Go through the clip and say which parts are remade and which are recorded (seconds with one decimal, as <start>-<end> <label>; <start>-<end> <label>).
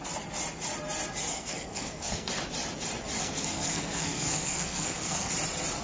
0.0-1.3 recorded; 1.3-2.3 remade; 2.3-3.2 recorded; 3.2-5.3 remade; 5.3-5.8 recorded